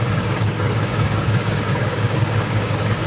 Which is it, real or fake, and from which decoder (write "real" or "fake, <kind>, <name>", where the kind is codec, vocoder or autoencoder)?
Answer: fake, codec, DAC